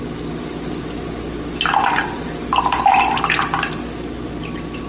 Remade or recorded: recorded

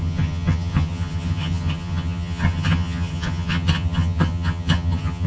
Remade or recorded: remade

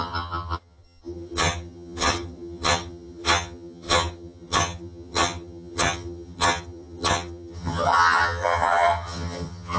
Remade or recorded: remade